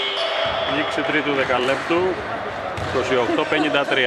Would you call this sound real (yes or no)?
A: no